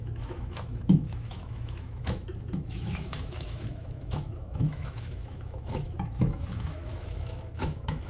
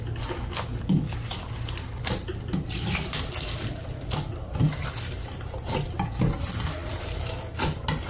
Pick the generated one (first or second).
first